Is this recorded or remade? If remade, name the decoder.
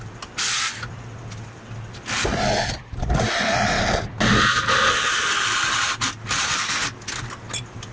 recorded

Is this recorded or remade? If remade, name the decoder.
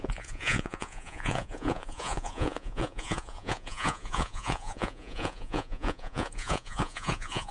remade, vocoder, Vocos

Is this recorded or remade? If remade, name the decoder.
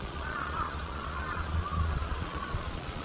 remade, vocoder, Vocos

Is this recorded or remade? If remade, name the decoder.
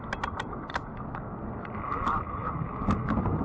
recorded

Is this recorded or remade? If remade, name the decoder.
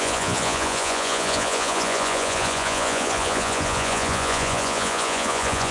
remade, vocoder, Vocos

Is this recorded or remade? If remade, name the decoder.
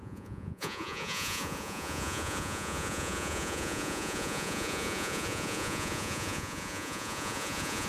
remade, vocoder, Vocos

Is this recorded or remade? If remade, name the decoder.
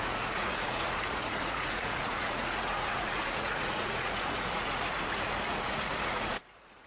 remade, vocoder, Vocos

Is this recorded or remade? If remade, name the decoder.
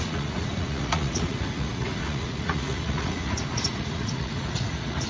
remade, vocoder, Vocos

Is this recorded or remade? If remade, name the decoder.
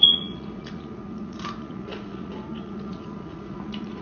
remade, vocoder, Vocos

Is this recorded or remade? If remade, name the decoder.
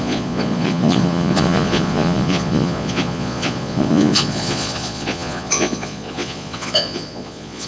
remade, vocoder, Vocos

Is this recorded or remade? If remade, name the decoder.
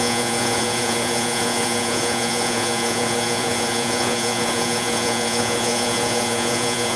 remade, vocoder, Vocos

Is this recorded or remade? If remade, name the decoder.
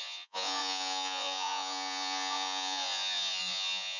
remade, vocoder, Vocos